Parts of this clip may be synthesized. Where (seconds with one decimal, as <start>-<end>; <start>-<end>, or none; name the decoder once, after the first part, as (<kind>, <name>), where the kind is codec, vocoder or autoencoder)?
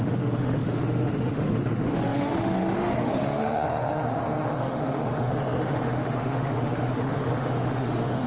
0.0-8.3 (autoencoder, DAC-VAE)